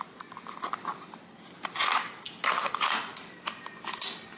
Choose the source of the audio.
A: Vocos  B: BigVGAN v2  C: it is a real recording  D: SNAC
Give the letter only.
C